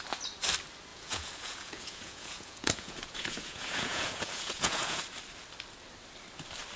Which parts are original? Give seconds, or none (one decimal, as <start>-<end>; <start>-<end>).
0.0-0.9; 5.0-6.8